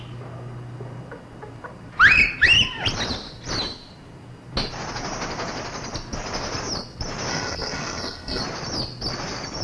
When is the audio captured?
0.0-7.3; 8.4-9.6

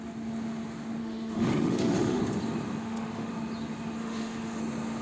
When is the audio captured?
0.0-1.0; 2.2-2.8; 3.3-4.0; 4.6-5.0

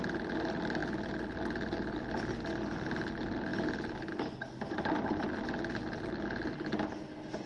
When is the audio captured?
0.0-7.5

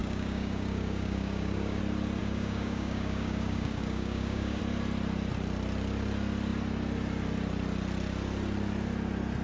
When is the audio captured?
1.8-2.2; 4.6-9.4

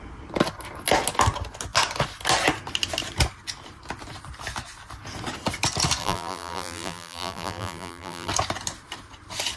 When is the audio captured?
0.0-6.0; 8.3-9.6

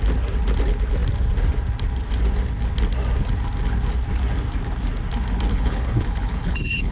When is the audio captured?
0.0-5.5

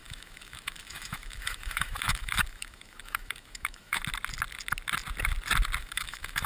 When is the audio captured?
4.0-5.8